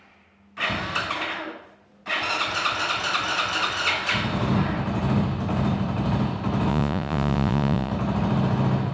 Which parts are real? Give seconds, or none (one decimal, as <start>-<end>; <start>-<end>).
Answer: 0.0-6.7; 7.9-8.9